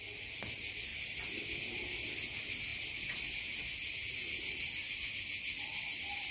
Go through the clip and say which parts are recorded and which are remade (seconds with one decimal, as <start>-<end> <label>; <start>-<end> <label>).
0.0-6.3 recorded